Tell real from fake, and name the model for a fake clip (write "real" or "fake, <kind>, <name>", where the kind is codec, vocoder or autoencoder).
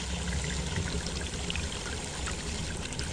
real